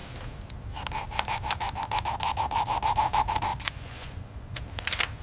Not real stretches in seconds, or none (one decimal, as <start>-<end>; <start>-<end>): 3.5-4.6